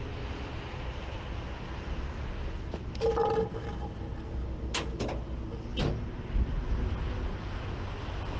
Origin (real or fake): real